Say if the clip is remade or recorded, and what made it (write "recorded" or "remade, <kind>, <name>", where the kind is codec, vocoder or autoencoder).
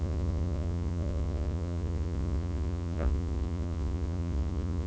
remade, vocoder, Vocos